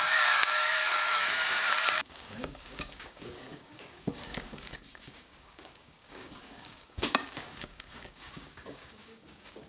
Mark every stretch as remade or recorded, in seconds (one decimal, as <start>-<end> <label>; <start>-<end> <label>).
0.0-9.7 remade